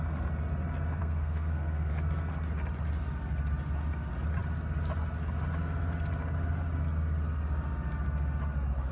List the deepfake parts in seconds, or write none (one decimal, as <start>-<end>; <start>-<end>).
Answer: 1.0-1.9